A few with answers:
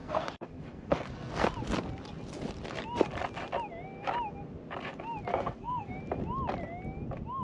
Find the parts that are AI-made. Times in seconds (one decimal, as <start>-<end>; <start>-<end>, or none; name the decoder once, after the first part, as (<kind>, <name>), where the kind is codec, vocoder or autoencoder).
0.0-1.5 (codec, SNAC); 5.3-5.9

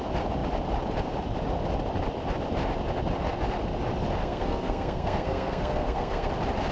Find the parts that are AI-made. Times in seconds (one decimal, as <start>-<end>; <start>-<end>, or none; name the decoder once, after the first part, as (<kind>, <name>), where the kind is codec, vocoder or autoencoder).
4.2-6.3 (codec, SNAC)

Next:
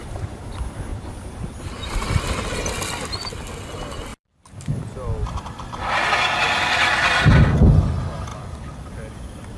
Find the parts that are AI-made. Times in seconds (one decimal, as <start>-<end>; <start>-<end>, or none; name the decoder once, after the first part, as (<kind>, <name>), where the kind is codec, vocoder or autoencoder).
0.9-2.7 (vocoder, BigVGAN v2); 4.1-6.2; 8.3-8.9

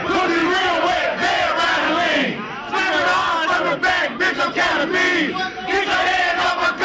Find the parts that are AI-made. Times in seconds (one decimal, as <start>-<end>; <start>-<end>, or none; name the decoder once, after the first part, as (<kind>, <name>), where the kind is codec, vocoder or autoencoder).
0.4-0.9 (vocoder, BigVGAN v2); 5.1-6.0

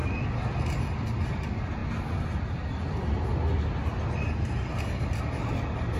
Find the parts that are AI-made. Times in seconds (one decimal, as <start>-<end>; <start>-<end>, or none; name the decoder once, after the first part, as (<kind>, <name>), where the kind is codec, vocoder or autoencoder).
none